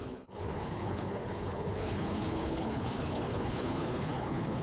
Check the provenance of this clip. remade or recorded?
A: remade